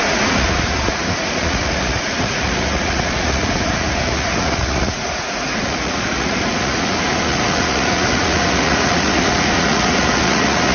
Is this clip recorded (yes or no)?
no